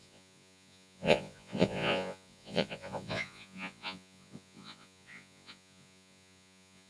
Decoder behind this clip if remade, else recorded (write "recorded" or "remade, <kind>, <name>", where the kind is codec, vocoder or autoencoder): remade, vocoder, Vocos